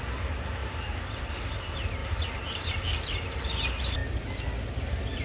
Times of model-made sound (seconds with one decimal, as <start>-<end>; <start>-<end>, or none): 0.6-1.2; 2.0-2.7

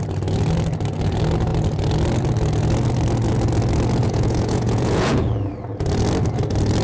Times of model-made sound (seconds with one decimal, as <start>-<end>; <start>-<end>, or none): 4.0-5.3

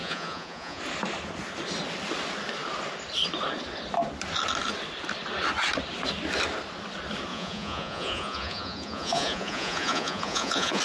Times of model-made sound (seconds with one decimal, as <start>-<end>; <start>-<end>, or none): 0.0-0.8; 7.3-10.8

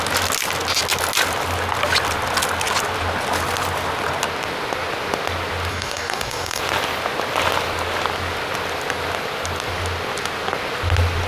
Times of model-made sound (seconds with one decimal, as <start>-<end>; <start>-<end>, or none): 5.7-6.6

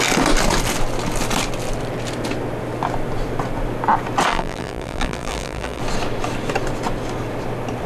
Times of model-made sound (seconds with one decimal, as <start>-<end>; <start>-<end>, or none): 4.3-5.8

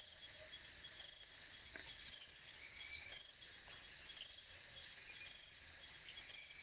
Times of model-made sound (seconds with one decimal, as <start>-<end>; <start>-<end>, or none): 1.8-3.2

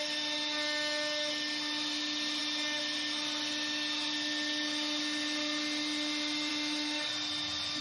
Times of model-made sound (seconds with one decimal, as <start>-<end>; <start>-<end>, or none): none

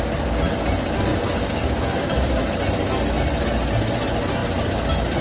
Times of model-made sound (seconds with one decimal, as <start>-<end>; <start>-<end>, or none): 1.1-2.4